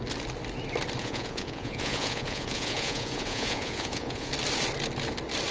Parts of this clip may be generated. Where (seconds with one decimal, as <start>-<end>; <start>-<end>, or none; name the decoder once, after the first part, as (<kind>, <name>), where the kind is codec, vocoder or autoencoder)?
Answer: 1.0-4.3 (vocoder, Vocos)